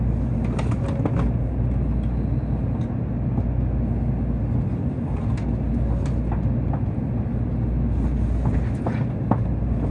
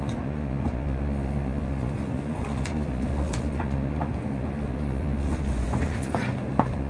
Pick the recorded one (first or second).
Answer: first